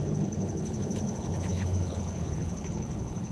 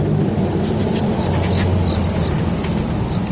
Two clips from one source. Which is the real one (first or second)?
second